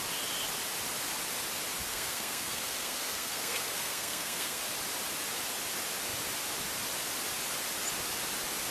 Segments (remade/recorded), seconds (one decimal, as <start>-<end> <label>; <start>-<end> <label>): 0.0-1.9 recorded; 1.9-4.6 remade; 4.6-8.7 recorded